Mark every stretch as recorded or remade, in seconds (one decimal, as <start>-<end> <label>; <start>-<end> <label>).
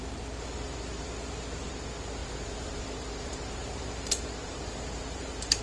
0.0-2.2 recorded; 2.2-5.6 remade